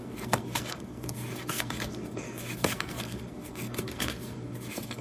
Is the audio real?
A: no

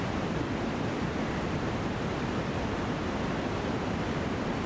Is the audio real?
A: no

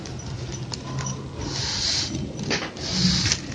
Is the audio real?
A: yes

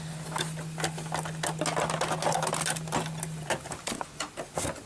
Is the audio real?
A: yes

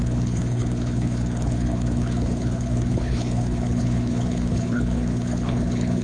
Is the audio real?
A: no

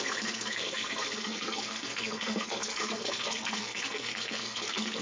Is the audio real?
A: no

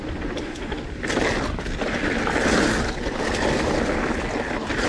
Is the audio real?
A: yes